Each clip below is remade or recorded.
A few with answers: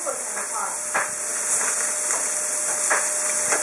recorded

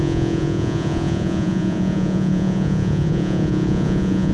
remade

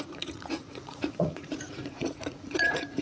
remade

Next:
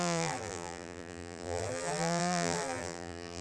remade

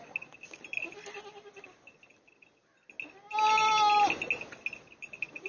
recorded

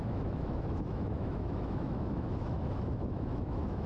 remade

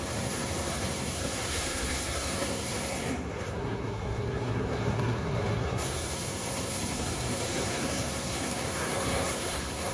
remade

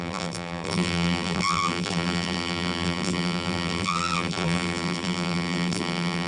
remade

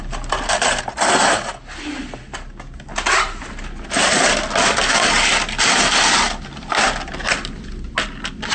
recorded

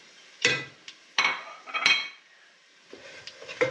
remade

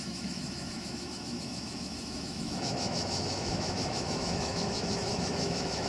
remade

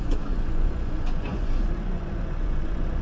remade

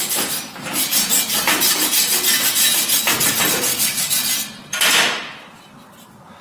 recorded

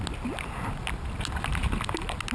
recorded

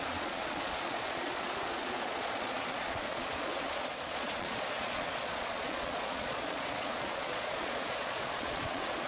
remade